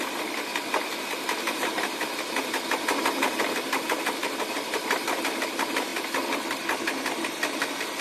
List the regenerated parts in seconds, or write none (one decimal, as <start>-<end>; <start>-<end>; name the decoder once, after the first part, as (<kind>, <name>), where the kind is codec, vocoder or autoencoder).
none